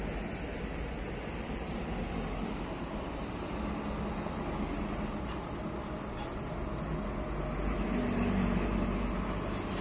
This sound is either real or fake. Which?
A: real